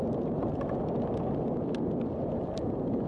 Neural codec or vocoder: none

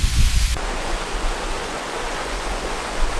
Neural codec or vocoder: vocoder, Vocos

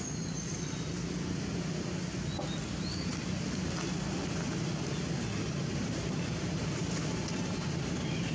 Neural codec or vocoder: none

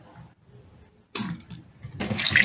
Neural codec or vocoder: none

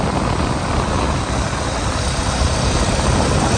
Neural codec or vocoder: none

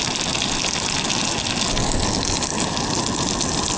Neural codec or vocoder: none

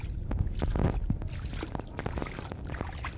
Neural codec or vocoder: none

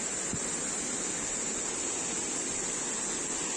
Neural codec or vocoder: none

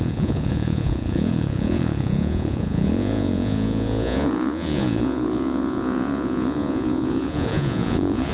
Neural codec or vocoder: vocoder, Vocos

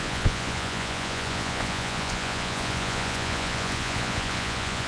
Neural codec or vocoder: vocoder, Vocos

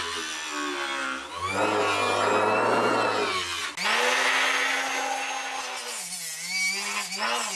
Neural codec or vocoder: none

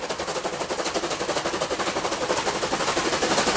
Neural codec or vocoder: none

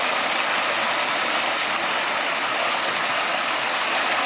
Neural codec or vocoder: none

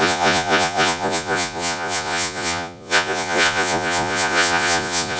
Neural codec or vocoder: vocoder, Vocos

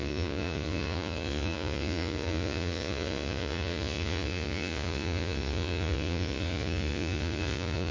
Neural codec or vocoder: vocoder, Vocos